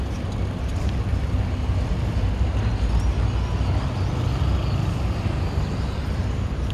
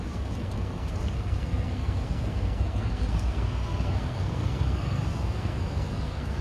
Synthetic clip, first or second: second